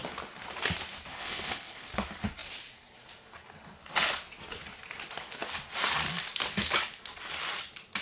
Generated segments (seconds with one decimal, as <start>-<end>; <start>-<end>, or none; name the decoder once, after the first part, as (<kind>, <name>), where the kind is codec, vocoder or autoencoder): 1.1-1.9 (codec, HILCodec)